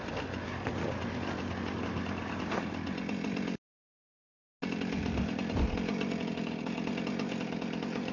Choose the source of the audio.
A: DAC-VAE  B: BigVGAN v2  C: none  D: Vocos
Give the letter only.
C